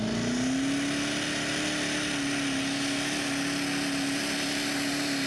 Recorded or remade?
recorded